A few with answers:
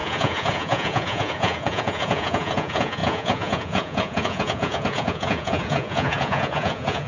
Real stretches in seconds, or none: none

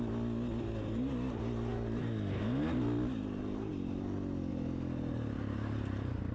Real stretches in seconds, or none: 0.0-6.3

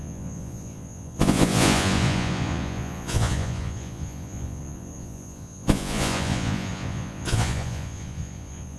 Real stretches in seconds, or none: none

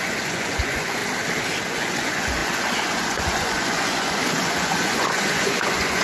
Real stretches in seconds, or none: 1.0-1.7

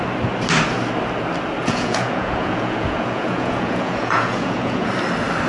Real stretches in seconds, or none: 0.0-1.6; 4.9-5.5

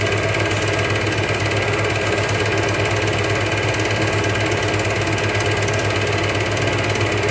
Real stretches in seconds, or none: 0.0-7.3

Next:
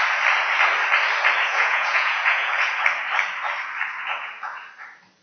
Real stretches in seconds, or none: 0.0-1.5; 2.5-5.2